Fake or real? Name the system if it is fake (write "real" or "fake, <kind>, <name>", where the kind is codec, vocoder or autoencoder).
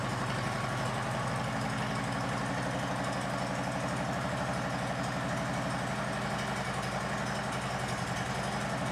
real